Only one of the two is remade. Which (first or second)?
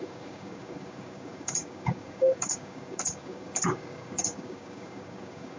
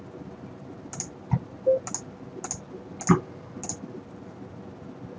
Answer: first